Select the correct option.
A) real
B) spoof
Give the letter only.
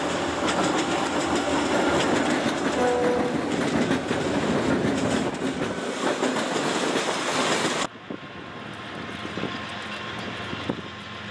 A